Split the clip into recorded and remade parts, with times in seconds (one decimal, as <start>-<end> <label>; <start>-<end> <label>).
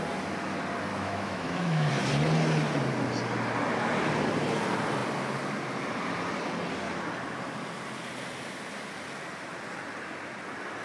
0.0-0.9 recorded; 0.9-1.9 remade; 1.9-10.8 recorded